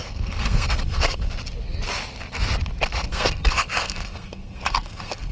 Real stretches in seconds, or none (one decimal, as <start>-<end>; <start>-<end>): 1.3-3.1